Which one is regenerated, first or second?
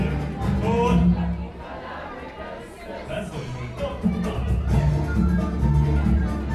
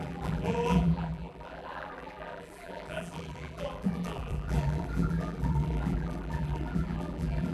second